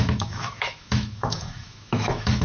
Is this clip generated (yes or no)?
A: yes